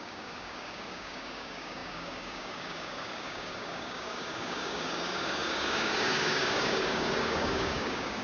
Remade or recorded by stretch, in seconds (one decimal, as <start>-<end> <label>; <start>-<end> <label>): 0.0-8.2 remade